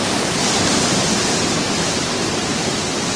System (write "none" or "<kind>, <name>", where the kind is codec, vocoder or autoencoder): vocoder, BigVGAN v2